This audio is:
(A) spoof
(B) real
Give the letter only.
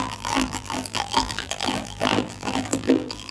A